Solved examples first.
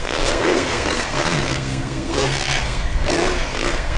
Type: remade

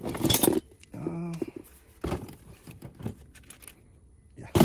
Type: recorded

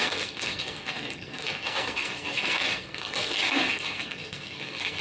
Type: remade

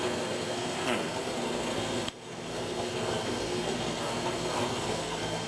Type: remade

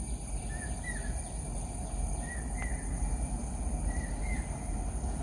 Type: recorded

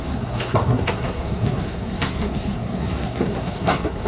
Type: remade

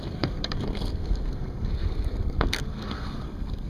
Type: remade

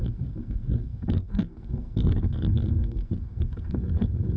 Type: remade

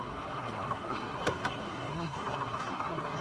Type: remade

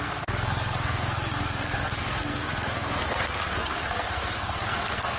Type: remade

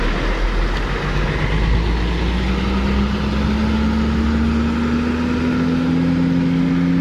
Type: recorded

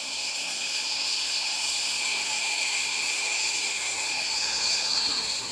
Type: remade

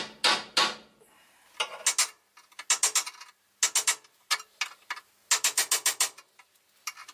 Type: recorded